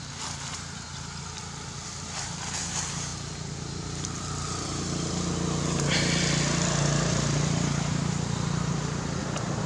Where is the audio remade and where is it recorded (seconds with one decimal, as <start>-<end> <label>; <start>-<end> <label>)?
0.0-3.1 recorded; 3.1-5.1 remade; 5.1-9.7 recorded